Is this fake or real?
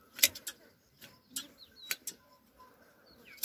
real